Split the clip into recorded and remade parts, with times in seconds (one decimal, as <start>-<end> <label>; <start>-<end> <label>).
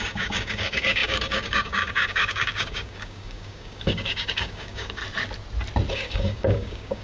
0.0-5.0 remade; 5.0-5.9 recorded; 5.9-7.0 remade